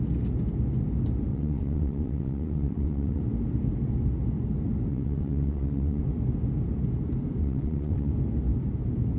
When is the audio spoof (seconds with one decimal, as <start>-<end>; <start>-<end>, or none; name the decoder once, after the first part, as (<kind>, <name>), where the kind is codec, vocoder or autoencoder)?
1.3-3.2 (vocoder, WaveNeXt); 4.9-6.0; 7.4-8.1